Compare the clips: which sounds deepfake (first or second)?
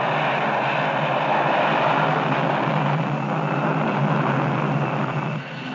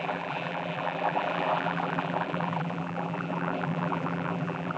second